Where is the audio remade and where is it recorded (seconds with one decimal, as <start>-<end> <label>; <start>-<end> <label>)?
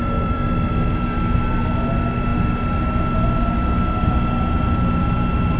0.0-0.7 remade; 0.7-5.6 recorded